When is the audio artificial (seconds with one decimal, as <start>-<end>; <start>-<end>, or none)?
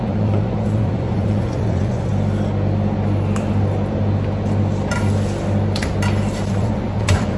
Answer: 0.0-2.1; 6.5-7.4